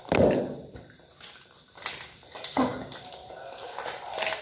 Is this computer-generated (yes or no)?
no